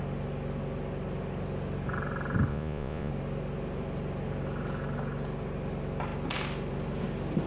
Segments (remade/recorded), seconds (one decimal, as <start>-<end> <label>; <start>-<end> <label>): 0.0-2.5 recorded; 2.5-3.1 remade; 3.1-7.5 recorded